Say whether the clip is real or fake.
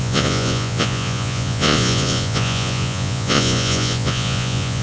fake